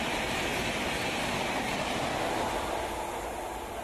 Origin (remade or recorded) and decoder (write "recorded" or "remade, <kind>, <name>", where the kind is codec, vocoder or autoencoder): recorded